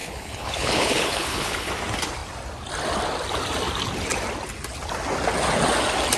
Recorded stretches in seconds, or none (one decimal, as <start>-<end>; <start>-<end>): 1.7-6.2